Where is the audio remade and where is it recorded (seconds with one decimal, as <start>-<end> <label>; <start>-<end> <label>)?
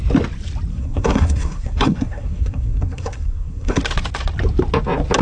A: 0.0-0.7 recorded; 0.7-3.8 remade; 3.8-5.2 recorded